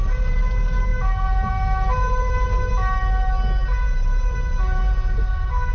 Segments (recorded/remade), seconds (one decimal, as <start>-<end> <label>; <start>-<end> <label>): 0.0-5.7 recorded